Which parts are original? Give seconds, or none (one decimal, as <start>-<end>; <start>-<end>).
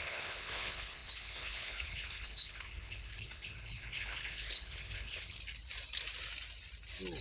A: 5.4-7.2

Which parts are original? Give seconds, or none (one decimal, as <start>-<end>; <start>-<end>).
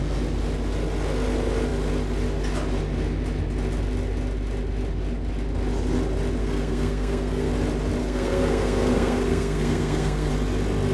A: 0.0-6.4; 7.5-8.0; 10.3-10.9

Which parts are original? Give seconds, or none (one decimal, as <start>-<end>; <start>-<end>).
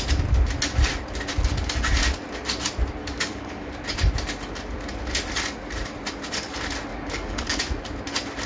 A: 0.0-3.0; 3.7-6.9; 7.6-8.5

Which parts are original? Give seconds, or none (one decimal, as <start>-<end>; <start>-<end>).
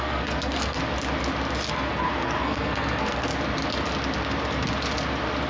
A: 0.8-1.7; 3.3-5.5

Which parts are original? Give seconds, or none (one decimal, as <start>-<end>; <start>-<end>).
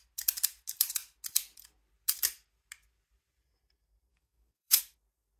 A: 0.0-4.1; 4.8-5.4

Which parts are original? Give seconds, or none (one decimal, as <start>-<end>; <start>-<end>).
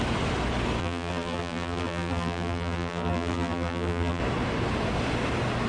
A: 0.0-0.8; 4.2-5.7